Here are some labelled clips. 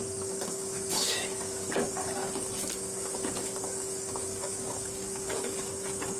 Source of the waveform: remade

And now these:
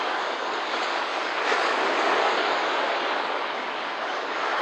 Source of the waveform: remade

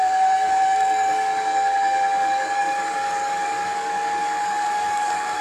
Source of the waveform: remade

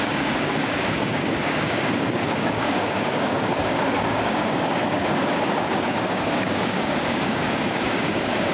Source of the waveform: remade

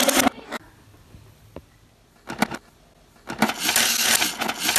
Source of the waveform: recorded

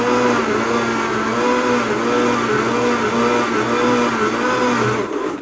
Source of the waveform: recorded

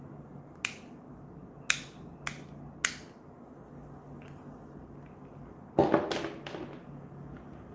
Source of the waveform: recorded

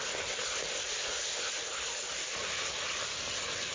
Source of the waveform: recorded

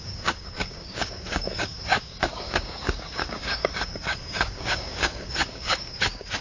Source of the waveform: remade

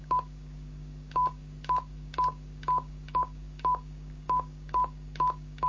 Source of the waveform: remade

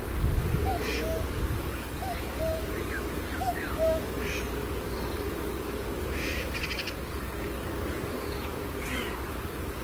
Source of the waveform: remade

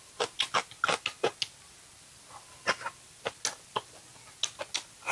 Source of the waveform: recorded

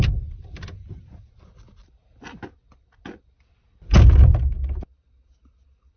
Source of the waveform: recorded